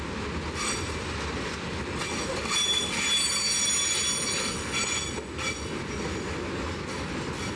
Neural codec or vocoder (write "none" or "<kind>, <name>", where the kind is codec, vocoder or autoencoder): none